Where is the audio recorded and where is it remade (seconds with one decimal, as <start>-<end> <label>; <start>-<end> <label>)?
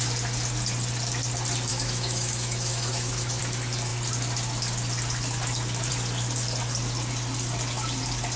0.0-1.7 recorded; 1.7-3.4 remade; 3.4-8.4 recorded